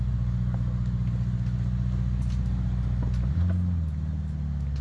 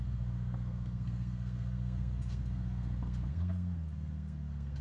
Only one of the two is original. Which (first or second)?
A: first